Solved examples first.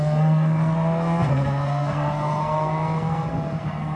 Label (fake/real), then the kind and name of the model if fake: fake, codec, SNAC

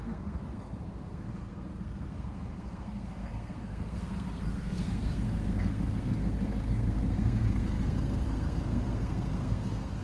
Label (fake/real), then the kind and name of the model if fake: fake, codec, SNAC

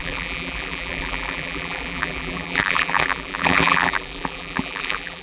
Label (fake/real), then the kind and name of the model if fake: fake, vocoder, BigVGAN v2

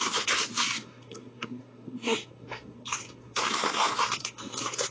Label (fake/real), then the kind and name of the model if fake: fake, codec, SNAC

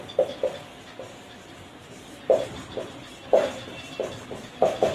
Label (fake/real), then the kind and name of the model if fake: real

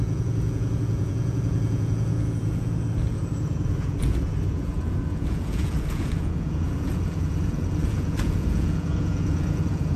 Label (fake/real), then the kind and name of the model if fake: fake, vocoder, Vocos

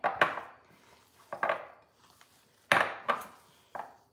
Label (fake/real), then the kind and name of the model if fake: real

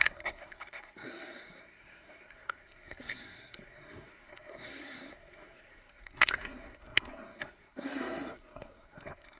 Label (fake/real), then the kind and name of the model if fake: fake, codec, SNAC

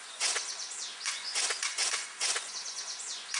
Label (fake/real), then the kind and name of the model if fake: fake, vocoder, Vocos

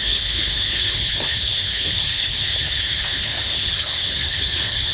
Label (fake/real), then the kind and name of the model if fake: fake, codec, HILCodec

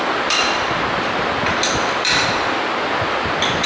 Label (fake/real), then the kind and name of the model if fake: real